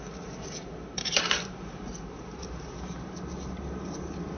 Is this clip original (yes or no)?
no